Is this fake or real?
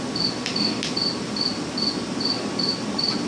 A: real